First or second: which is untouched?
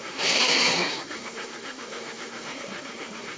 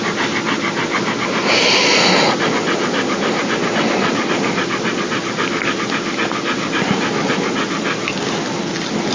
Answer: second